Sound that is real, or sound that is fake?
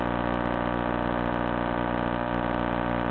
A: real